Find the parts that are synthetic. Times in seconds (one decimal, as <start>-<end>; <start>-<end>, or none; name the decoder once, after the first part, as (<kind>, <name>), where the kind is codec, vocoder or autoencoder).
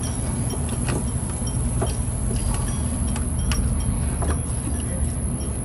none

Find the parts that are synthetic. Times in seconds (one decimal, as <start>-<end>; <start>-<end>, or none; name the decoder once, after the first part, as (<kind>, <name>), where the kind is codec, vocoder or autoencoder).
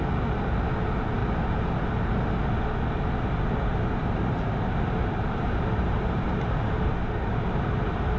1.2-2.3 (vocoder, BigVGAN v2); 4.0-7.0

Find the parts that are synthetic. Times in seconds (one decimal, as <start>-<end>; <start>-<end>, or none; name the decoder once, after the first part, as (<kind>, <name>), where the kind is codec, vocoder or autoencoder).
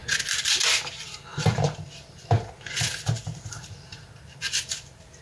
none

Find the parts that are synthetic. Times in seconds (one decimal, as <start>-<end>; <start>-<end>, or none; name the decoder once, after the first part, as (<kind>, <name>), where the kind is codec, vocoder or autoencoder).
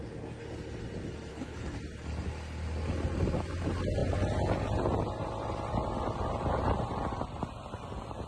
1.3-1.8 (codec, HILCodec)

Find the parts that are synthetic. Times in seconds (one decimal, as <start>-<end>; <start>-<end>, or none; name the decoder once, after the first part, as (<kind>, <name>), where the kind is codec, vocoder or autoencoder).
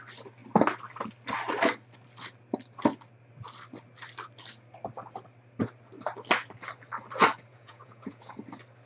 7.5-8.4 (vocoder, Vocos)